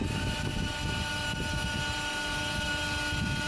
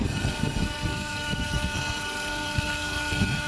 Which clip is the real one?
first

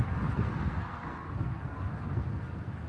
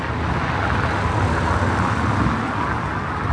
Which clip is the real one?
second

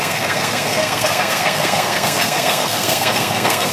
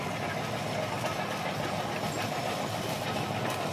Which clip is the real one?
second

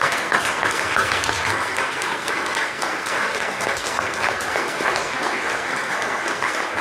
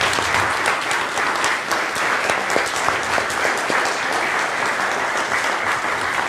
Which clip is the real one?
second